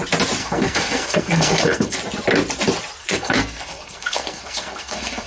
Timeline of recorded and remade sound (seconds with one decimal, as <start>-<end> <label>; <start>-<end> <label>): 0.0-0.4 recorded; 0.4-2.0 remade; 2.0-3.0 recorded; 3.0-5.3 remade